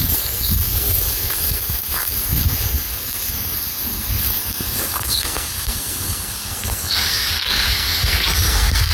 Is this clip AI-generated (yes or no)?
yes